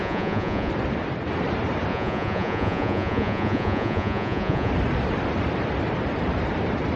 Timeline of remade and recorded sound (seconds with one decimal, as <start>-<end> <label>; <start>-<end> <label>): 0.0-0.7 remade; 0.7-1.9 recorded; 1.9-4.7 remade; 4.7-7.0 recorded

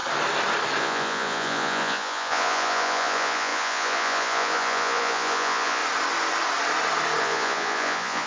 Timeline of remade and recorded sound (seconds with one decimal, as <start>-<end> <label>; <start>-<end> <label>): 0.0-0.8 recorded; 0.8-5.8 remade; 5.8-7.2 recorded; 7.2-8.3 remade